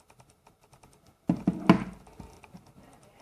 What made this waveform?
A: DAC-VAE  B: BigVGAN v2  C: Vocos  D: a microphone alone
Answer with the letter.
D